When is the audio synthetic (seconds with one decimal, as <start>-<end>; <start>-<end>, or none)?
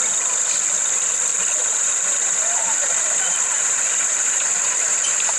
1.3-2.2; 2.8-4.4